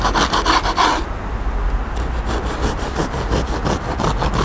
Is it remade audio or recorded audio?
recorded